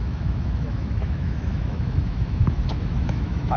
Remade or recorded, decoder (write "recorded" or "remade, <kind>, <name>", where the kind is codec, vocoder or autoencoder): remade, autoencoder, DAC-VAE